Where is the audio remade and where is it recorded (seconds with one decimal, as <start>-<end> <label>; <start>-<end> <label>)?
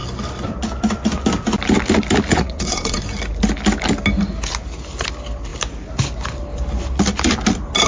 0.0-2.3 recorded; 2.3-3.0 remade; 3.0-7.9 recorded